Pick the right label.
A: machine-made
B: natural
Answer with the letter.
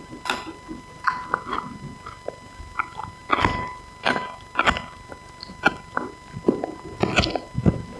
B